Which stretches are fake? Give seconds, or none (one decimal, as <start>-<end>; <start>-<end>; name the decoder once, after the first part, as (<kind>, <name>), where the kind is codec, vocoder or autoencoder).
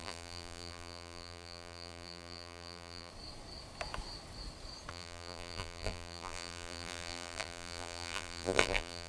0.0-3.1 (vocoder, BigVGAN v2); 4.9-9.1